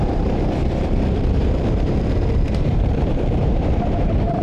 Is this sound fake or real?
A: fake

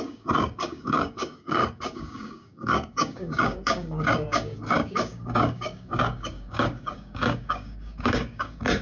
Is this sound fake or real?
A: fake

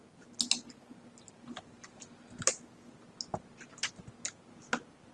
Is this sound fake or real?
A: real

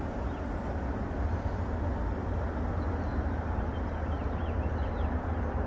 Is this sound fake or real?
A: real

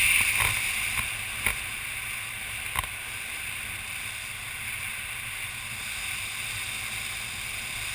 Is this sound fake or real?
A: real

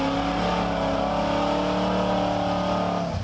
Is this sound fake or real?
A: real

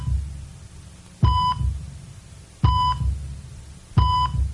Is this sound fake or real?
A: real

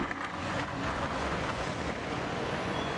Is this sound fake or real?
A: fake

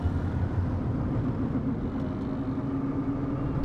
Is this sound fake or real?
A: real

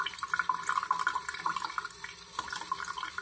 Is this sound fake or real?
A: real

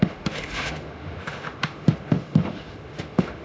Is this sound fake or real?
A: fake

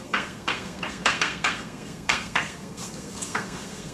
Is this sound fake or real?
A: fake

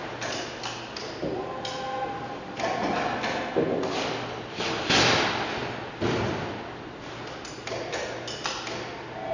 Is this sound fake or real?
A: real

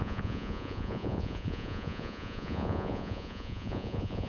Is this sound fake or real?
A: fake